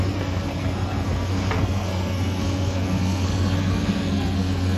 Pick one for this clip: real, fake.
fake